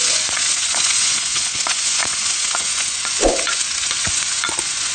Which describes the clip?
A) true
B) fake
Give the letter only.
B